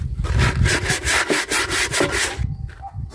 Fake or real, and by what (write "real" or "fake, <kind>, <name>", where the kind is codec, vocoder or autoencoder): real